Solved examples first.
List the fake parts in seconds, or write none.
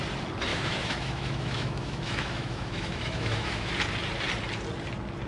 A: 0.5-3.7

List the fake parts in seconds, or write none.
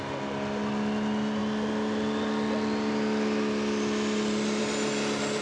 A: none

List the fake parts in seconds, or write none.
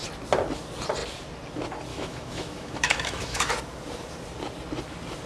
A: 1.9-3.5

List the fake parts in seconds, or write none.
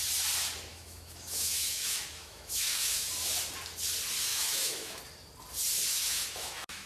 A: 0.7-3.1; 4.3-5.0; 5.9-6.9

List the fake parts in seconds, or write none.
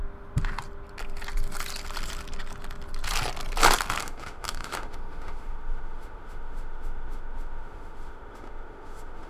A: 4.0-9.3